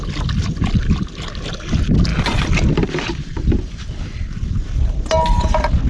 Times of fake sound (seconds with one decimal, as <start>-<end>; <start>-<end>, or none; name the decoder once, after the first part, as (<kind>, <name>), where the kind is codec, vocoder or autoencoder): 2.1-4.3 (vocoder, BigVGAN v2)